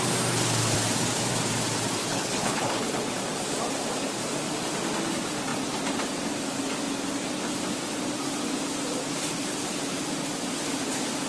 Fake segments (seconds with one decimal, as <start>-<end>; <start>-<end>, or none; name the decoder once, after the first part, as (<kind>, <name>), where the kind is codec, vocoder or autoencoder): 2.0-3.1 (codec, HILCodec)

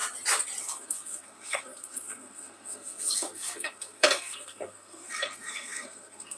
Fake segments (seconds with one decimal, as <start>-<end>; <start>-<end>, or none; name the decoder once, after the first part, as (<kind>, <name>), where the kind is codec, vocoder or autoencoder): 0.6-6.4 (codec, SNAC)

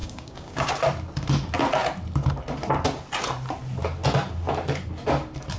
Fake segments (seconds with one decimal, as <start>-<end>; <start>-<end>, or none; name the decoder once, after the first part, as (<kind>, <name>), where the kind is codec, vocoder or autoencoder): 0.0-0.7 (codec, DAC)

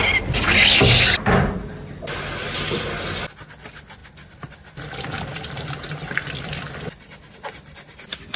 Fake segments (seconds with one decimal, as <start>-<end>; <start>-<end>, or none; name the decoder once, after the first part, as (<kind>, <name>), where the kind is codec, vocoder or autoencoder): 4.0-6.7 (vocoder, BigVGAN v2)